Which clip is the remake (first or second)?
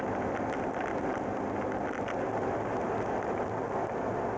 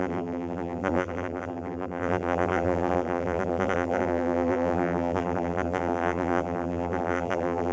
second